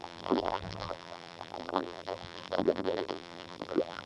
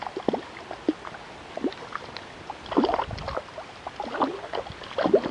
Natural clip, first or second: second